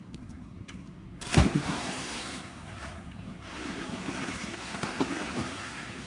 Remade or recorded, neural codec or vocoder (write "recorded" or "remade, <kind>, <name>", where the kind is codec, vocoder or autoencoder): remade, codec, SNAC